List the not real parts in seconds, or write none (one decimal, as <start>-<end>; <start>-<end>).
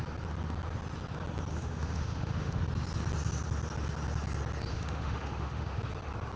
1.5-2.6; 4.7-5.8